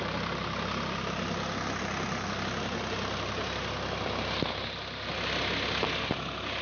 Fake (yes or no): no